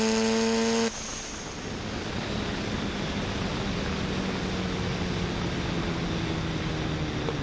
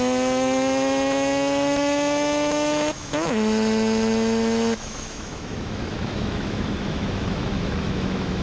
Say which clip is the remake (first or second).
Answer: second